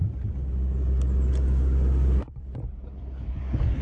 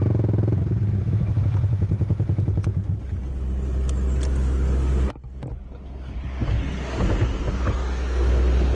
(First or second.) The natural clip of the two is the second